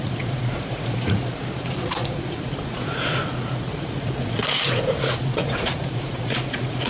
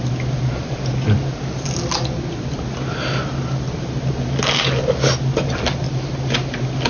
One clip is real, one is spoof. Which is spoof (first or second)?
first